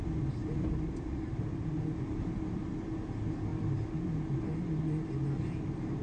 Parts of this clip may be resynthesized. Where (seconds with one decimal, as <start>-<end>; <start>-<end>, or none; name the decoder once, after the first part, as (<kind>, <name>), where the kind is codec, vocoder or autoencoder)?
0.4-2.6 (vocoder, BigVGAN v2)